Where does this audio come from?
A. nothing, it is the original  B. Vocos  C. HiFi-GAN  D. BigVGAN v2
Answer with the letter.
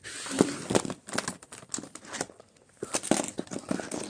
A